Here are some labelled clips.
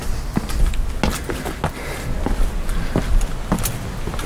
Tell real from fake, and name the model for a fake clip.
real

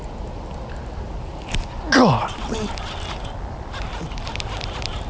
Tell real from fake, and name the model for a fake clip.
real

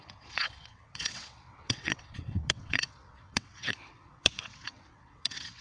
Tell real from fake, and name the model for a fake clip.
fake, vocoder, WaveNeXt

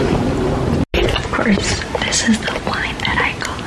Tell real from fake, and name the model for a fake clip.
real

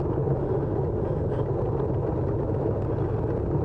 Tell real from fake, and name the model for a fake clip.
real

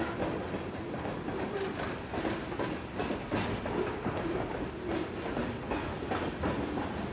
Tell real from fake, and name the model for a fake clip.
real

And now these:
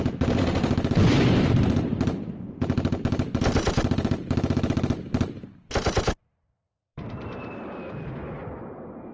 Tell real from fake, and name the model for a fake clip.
fake, vocoder, BigVGAN v2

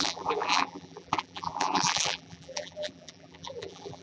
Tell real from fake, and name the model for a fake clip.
fake, vocoder, BigVGAN v2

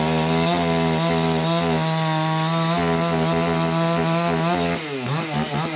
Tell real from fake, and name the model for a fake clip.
real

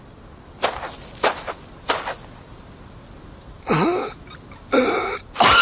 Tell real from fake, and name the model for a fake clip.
real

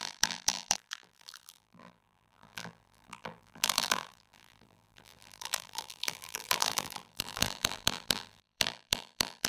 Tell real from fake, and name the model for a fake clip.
fake, vocoder, BigVGAN v2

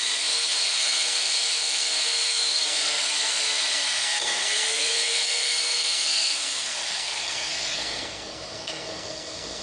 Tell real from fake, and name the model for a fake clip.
fake, codec, SNAC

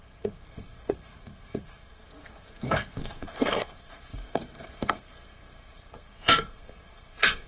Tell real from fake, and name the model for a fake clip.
fake, codec, SNAC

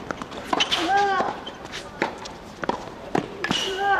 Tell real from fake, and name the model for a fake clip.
fake, vocoder, BigVGAN v2